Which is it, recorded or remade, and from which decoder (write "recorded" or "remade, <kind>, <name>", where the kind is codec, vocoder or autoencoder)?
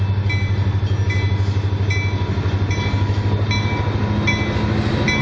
recorded